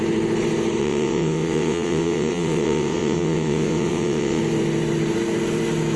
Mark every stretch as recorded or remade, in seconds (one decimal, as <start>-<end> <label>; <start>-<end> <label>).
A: 0.0-0.8 recorded; 0.8-4.4 remade; 4.4-6.0 recorded